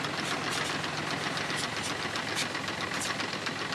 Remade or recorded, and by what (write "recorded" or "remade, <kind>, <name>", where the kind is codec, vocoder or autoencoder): recorded